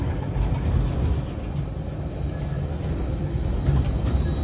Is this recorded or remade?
recorded